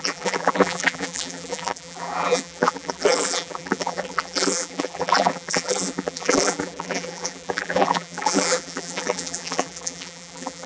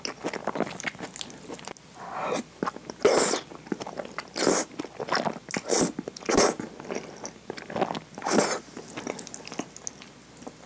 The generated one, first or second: first